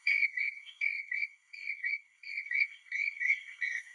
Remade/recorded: remade